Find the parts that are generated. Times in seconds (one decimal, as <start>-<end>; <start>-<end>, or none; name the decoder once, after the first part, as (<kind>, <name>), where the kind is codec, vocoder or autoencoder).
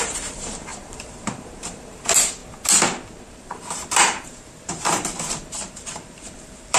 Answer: 0.0-2.4 (vocoder, BigVGAN v2); 3.3-5.1; 5.6-6.8